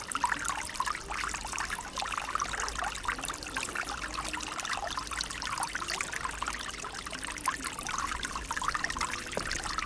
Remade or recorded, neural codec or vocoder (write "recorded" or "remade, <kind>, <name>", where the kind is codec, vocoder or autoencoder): recorded